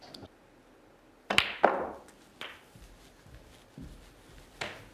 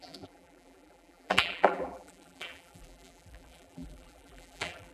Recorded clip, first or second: first